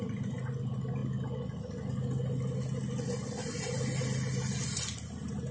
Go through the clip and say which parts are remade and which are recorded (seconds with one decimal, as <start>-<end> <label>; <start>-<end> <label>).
0.0-5.5 recorded

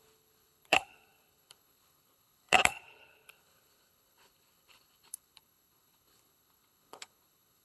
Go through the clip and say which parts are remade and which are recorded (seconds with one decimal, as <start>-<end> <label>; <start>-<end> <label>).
0.0-7.6 remade

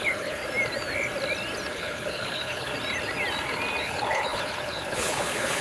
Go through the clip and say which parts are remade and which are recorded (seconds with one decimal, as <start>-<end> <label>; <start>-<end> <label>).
0.0-0.4 remade; 0.4-1.7 recorded; 1.7-2.7 remade; 2.7-3.8 recorded; 3.8-5.6 remade

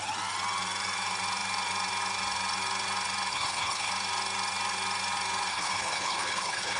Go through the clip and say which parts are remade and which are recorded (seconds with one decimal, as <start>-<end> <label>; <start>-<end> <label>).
0.0-3.3 recorded; 3.3-3.9 remade; 3.9-5.5 recorded; 5.5-6.8 remade

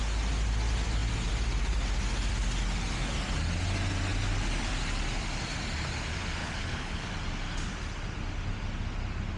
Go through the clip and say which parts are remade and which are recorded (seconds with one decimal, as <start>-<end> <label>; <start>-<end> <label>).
0.0-6.4 recorded; 6.4-7.1 remade; 7.1-9.4 recorded

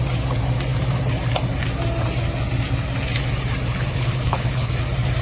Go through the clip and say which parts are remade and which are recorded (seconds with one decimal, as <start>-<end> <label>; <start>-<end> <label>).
0.0-3.9 recorded; 3.9-4.7 remade; 4.7-5.2 recorded